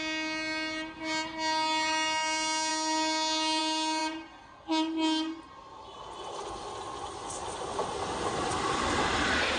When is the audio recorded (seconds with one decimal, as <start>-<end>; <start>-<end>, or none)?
0.0-9.6